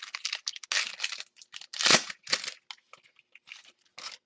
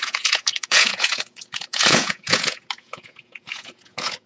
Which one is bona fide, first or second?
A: first